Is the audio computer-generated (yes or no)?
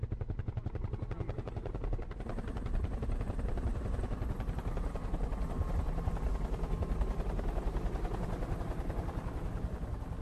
no